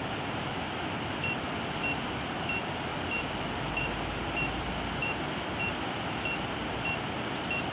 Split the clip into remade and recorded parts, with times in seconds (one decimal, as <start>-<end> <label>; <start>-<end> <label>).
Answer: 0.0-2.9 recorded; 2.9-5.5 remade; 5.5-7.7 recorded